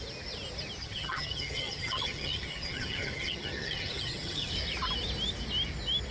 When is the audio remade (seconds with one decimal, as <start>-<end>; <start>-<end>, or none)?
0.8-4.5